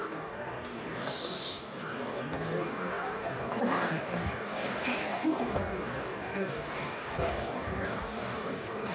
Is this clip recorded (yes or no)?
no